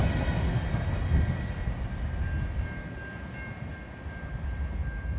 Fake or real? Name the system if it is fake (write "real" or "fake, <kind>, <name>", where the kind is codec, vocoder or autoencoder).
real